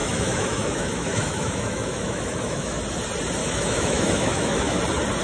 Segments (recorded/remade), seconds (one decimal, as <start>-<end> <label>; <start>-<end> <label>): 0.0-2.8 remade; 2.8-3.4 recorded; 3.4-4.8 remade; 4.8-5.2 recorded